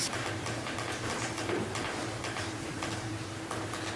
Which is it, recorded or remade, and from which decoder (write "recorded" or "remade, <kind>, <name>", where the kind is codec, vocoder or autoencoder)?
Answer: remade, vocoder, BigVGAN v2